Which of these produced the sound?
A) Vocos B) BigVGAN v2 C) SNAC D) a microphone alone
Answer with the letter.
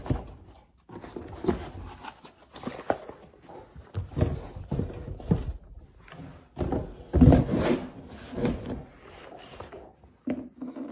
D